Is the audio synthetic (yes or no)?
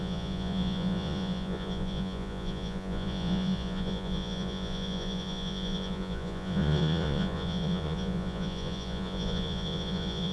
yes